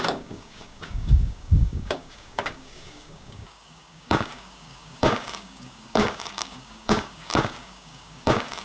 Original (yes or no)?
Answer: no